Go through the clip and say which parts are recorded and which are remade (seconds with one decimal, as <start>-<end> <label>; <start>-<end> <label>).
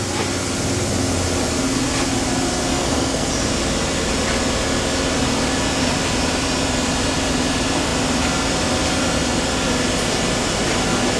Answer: 0.0-2.7 recorded; 2.7-3.3 remade; 3.3-11.2 recorded